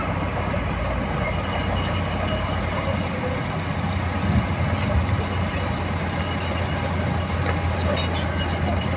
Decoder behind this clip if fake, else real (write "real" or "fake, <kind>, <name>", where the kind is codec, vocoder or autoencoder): real